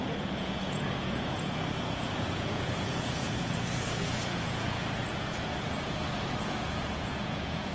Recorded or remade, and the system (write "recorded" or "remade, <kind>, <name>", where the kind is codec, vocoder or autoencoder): remade, vocoder, Vocos